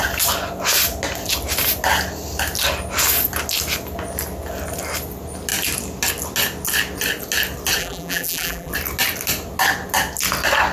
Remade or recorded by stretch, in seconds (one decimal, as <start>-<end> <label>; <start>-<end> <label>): 0.0-7.8 recorded; 7.8-8.7 remade; 8.7-10.7 recorded